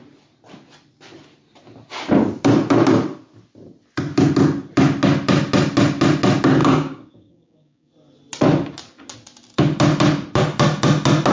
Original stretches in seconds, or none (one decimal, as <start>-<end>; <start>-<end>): 0.0-6.6; 7.9-11.3